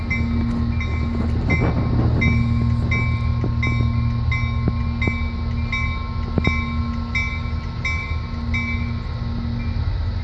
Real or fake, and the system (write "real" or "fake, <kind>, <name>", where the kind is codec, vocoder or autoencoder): real